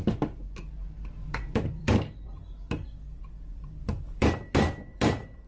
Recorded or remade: remade